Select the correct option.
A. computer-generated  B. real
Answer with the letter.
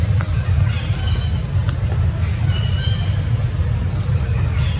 B